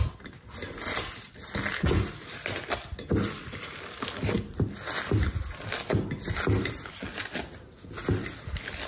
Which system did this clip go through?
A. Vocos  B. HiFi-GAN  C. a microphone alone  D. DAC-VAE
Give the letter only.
C